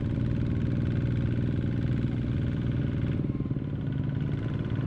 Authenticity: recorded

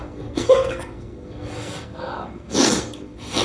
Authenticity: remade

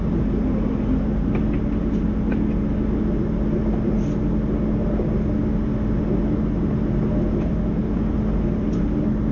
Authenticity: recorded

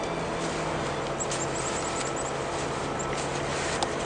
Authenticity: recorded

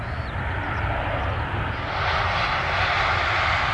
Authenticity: recorded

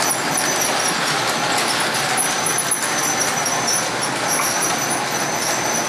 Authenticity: recorded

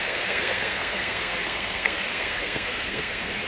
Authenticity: remade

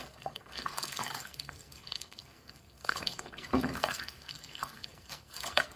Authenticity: remade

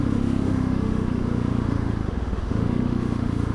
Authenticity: remade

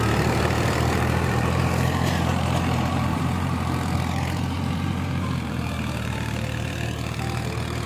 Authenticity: remade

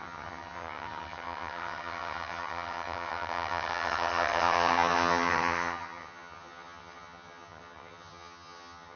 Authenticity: remade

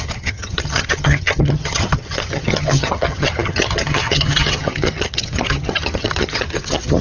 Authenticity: remade